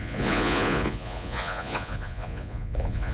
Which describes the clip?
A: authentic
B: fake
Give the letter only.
B